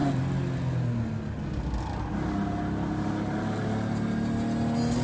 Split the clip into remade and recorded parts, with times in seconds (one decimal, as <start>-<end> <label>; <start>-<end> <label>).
0.0-5.0 recorded